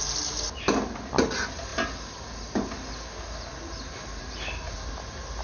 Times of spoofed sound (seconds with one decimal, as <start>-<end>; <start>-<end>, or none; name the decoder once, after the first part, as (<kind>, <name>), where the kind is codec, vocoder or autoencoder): none